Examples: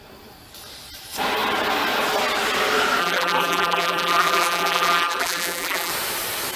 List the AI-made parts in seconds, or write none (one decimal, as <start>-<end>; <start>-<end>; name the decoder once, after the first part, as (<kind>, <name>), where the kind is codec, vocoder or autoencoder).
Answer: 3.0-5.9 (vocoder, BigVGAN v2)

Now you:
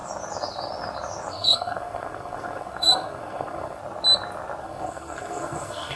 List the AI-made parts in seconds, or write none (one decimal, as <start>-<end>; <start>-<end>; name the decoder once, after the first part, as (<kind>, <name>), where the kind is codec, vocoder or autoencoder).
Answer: 1.3-3.8 (codec, SNAC); 4.6-6.0

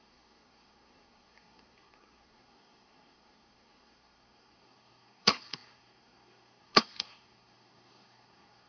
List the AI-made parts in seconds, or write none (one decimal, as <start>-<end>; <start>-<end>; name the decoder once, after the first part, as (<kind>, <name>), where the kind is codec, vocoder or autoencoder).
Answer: 0.0-8.7 (codec, SNAC)

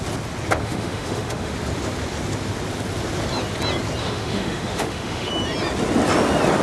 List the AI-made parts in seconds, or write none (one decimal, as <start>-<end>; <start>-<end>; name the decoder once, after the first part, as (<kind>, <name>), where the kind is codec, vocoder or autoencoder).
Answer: 0.6-1.5 (autoencoder, DAC-VAE); 4.0-5.3

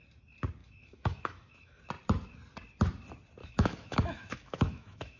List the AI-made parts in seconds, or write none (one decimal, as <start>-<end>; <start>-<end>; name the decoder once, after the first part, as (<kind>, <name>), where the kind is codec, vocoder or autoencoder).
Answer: 0.6-1.8 (autoencoder, DAC-VAE); 3.4-5.2

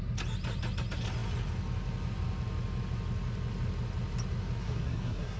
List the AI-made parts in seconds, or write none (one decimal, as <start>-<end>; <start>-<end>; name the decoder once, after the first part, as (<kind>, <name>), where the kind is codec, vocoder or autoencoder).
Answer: 4.6-5.4 (codec, SNAC)

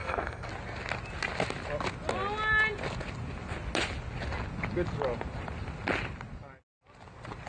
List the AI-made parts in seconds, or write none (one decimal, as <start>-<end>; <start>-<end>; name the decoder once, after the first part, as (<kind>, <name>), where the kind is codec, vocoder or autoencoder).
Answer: 0.0-0.5 (codec, SNAC)

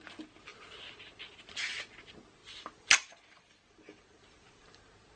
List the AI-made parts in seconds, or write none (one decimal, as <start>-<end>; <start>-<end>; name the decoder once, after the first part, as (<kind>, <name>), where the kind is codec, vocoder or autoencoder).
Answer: 2.4-4.8 (vocoder, BigVGAN v2)